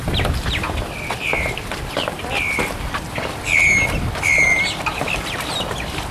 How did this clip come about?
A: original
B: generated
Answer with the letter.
A